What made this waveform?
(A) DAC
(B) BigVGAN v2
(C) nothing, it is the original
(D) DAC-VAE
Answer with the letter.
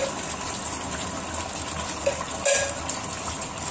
C